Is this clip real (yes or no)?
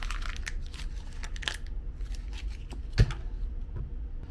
yes